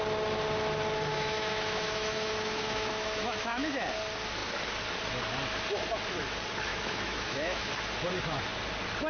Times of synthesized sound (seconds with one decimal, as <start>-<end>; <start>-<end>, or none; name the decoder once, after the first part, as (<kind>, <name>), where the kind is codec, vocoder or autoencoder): 1.1-3.7 (autoencoder, DAC-VAE); 6.7-7.7